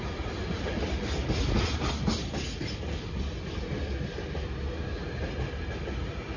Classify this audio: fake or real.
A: real